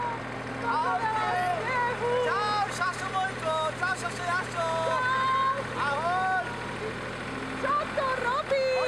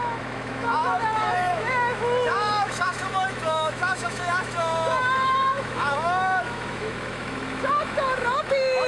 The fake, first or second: second